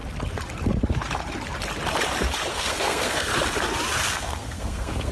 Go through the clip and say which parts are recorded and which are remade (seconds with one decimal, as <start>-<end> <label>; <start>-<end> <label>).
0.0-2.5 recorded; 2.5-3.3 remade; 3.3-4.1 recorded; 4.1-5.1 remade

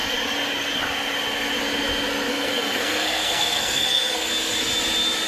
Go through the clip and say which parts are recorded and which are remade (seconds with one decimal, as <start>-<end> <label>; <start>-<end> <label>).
0.0-2.3 recorded; 2.3-4.3 remade; 4.3-5.3 recorded

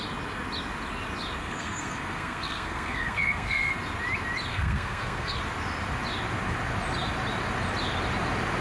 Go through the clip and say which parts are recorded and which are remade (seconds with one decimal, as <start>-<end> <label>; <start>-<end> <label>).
0.0-1.4 recorded; 1.4-3.7 remade; 3.7-4.5 recorded; 4.5-5.4 remade; 5.4-8.6 recorded

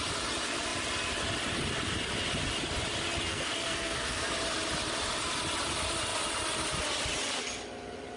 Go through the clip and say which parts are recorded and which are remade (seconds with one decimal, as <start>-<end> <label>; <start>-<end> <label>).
0.0-3.3 recorded; 3.3-4.3 remade; 4.3-8.2 recorded

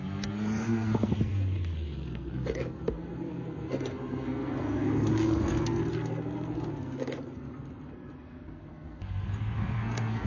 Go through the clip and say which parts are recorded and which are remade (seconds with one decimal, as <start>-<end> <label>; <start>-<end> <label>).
0.0-10.3 remade

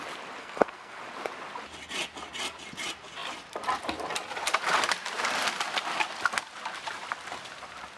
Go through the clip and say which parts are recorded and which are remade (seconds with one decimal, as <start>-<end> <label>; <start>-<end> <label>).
0.0-0.4 recorded; 0.4-1.0 remade; 1.0-8.0 recorded

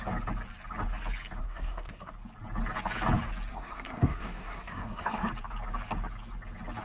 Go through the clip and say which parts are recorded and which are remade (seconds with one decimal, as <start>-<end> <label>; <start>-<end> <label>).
0.0-1.4 recorded; 1.4-2.1 remade; 2.1-3.5 recorded; 3.5-5.3 remade; 5.3-6.8 recorded